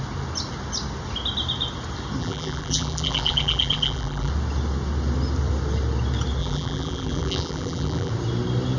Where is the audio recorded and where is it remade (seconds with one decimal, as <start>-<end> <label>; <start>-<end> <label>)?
0.0-2.2 recorded; 2.2-4.3 remade; 4.3-6.4 recorded; 6.4-8.1 remade; 8.1-8.8 recorded